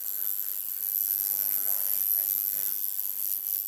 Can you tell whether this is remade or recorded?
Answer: remade